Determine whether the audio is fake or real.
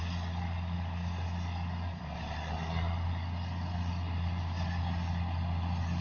real